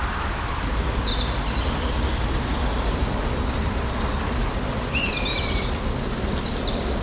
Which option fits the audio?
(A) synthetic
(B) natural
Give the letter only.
B